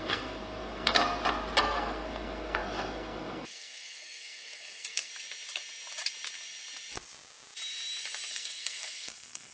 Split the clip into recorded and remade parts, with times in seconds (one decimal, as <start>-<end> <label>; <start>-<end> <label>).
0.0-1.0 remade; 1.0-1.6 recorded; 1.6-5.1 remade; 5.1-8.3 recorded; 8.3-9.5 remade